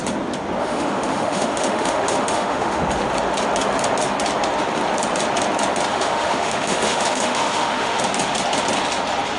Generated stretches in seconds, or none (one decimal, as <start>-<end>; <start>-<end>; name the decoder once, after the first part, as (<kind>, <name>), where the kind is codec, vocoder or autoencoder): 0.6-2.8 (autoencoder, DAC-VAE); 5.9-8.0